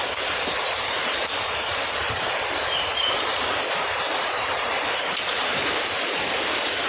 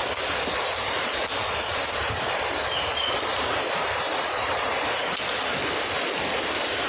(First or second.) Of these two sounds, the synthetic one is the first